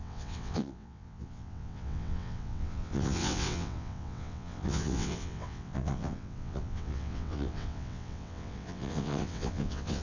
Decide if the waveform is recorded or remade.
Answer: remade